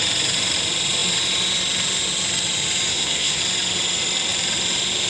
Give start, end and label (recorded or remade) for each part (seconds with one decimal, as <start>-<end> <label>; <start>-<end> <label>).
0.0-2.9 recorded; 2.9-3.4 remade; 3.4-5.1 recorded